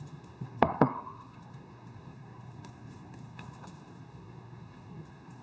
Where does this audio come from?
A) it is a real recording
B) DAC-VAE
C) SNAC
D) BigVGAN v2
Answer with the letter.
C